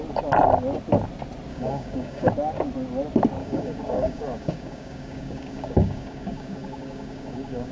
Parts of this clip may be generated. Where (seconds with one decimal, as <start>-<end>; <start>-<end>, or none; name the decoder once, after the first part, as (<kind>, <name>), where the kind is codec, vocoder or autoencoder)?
1.5-2.3 (codec, DAC); 3.4-7.7